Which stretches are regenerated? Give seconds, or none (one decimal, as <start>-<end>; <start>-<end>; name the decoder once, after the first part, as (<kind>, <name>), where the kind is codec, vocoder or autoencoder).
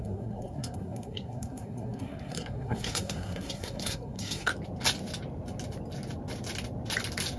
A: 0.0-4.5 (codec, SNAC)